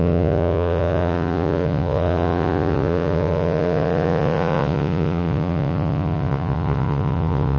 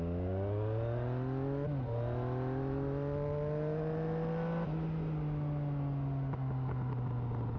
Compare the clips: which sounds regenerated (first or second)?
first